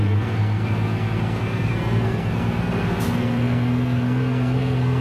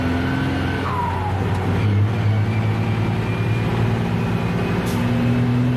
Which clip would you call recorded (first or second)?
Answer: second